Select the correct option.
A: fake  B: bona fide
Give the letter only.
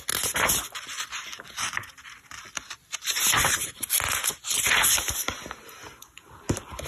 B